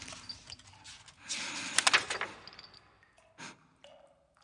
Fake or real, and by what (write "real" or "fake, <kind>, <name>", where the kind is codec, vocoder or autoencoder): real